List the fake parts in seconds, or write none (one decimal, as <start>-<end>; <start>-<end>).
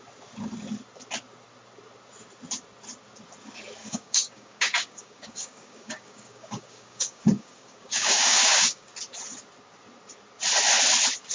3.8-8.9